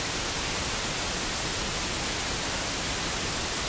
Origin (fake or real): real